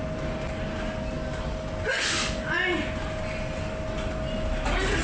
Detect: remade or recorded recorded